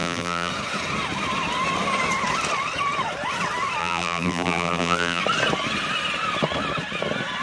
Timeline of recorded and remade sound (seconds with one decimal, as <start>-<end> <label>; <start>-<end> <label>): 0.0-0.5 remade; 0.5-3.8 recorded; 3.8-5.2 remade; 5.2-7.4 recorded